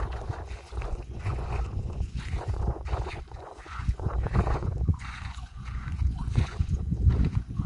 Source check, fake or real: fake